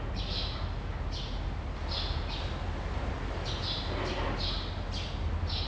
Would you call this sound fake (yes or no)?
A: no